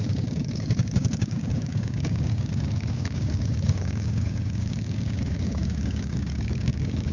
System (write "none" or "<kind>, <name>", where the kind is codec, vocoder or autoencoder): codec, DAC